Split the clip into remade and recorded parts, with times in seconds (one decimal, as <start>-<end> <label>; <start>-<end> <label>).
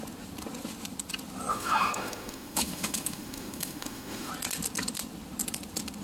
0.0-1.5 recorded; 1.5-4.3 remade; 4.3-6.0 recorded